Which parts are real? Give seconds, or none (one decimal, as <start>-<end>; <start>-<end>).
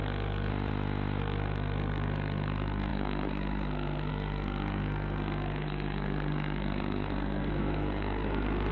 0.5-1.2